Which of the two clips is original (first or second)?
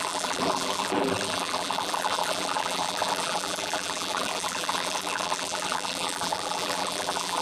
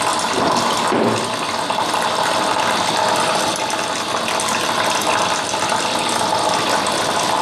second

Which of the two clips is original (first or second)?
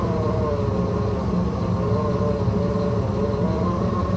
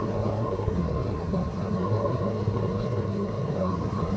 first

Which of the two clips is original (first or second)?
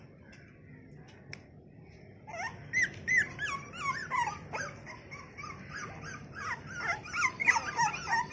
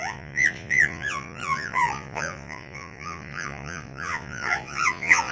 first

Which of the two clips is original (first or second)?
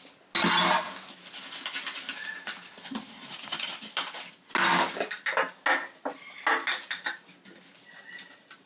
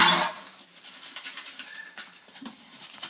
first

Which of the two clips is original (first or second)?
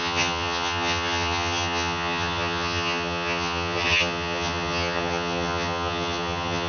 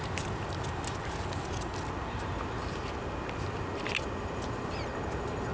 second